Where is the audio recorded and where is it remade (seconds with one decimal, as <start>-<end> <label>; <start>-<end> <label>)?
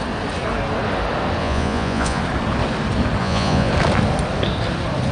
0.0-1.4 recorded; 1.4-2.2 remade; 2.2-3.2 recorded; 3.2-3.7 remade; 3.7-5.1 recorded